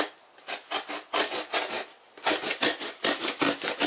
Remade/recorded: recorded